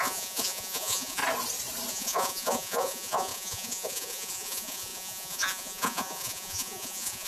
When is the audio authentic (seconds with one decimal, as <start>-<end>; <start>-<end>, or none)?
1.2-1.9